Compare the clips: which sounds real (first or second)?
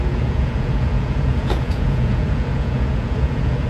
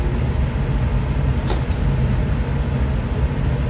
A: second